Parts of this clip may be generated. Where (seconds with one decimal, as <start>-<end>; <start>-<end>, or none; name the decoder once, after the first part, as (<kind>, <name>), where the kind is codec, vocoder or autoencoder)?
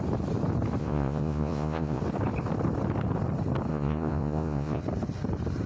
0.8-2.0 (vocoder, Vocos); 3.7-4.8